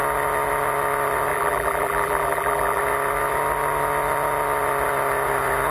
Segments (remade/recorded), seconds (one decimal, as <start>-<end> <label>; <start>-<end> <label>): 0.0-1.3 recorded; 1.3-2.8 remade; 2.8-5.7 recorded